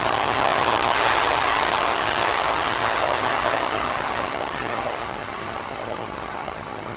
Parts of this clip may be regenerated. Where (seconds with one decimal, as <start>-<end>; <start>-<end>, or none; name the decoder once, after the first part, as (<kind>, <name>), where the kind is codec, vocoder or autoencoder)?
0.0-7.0 (vocoder, HiFi-GAN)